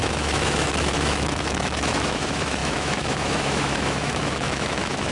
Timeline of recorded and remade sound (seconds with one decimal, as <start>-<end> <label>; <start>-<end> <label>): 0.0-5.1 remade